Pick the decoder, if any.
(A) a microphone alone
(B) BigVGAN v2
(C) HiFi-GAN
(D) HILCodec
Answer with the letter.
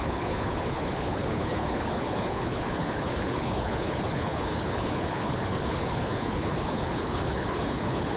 D